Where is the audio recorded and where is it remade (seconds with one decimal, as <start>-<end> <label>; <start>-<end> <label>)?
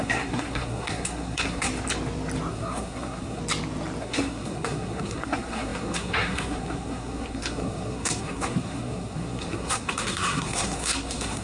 0.0-1.7 remade; 1.7-2.5 recorded; 2.5-3.4 remade; 3.4-4.0 recorded; 4.0-11.4 remade